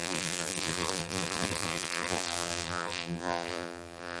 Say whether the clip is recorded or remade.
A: remade